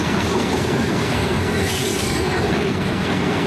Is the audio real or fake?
fake